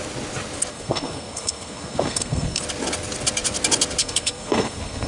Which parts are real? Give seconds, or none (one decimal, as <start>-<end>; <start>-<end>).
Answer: 0.0-0.7; 2.6-4.0